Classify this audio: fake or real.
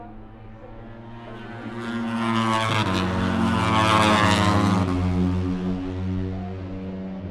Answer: real